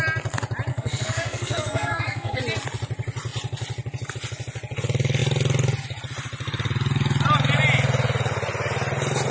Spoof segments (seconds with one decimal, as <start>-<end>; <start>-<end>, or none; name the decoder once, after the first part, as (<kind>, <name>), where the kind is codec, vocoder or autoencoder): 0.7-2.4 (codec, SNAC)

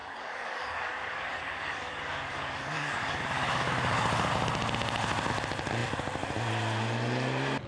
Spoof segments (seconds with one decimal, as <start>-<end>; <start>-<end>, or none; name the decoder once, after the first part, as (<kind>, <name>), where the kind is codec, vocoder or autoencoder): 0.0-4.3 (codec, DAC)

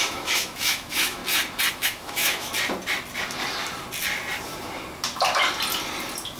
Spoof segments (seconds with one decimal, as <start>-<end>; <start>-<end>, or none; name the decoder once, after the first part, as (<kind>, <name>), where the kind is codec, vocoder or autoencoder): 0.0-1.2 (autoencoder, DAC-VAE); 1.7-2.5